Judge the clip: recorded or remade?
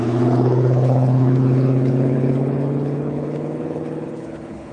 remade